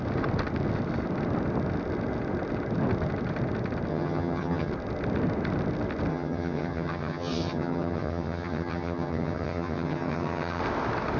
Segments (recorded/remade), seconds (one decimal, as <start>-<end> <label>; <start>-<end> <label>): 0.0-3.9 recorded; 3.9-4.7 remade; 4.7-6.1 recorded; 6.1-10.6 remade; 10.6-11.2 recorded